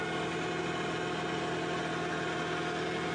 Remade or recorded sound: recorded